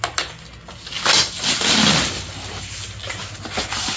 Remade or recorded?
recorded